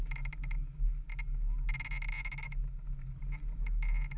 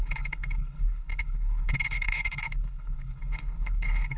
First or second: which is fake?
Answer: second